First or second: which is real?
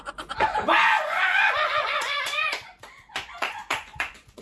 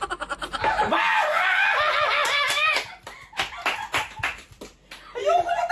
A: second